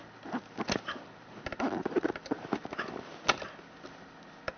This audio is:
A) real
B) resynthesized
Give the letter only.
A